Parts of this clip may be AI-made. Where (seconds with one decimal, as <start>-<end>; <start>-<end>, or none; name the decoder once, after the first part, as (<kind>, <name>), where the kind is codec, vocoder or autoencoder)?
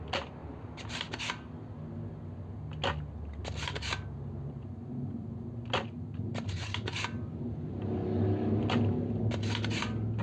none